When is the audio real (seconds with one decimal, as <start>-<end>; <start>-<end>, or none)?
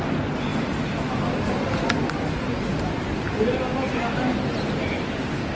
0.0-5.5